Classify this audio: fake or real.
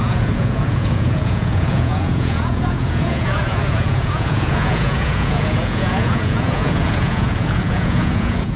fake